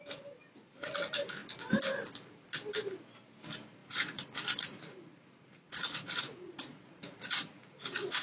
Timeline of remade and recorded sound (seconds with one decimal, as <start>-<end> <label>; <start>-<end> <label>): 0.0-3.8 recorded; 3.8-8.2 remade